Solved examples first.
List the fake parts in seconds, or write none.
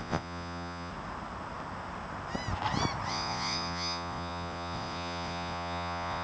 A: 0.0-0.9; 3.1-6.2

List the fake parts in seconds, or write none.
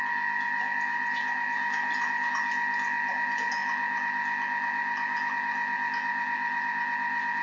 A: none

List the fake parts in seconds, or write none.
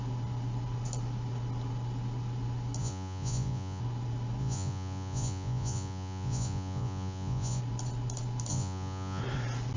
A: 2.8-3.8; 4.4-7.6; 8.5-9.2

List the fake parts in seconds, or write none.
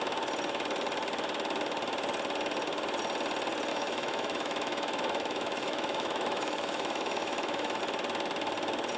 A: 3.7-7.8